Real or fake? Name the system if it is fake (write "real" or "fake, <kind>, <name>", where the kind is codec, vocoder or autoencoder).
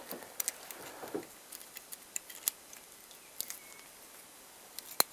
real